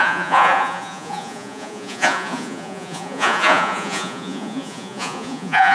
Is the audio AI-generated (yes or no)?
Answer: yes